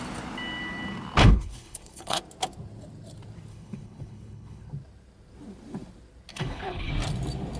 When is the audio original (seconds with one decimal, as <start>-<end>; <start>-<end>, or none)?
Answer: 0.0-1.2; 2.2-3.5; 4.7-6.3; 6.9-7.6